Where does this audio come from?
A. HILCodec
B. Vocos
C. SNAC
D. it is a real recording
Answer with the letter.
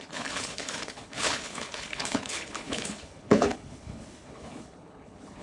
A